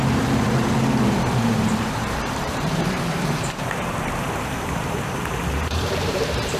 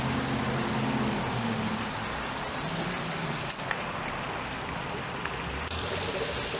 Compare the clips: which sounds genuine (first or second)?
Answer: second